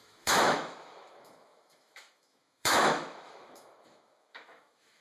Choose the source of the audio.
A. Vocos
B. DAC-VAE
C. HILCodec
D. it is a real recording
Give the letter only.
B